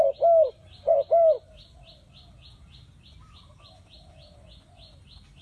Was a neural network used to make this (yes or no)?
no